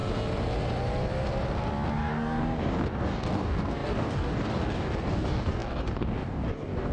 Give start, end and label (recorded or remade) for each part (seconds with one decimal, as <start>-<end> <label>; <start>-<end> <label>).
0.0-1.9 recorded; 1.9-6.9 remade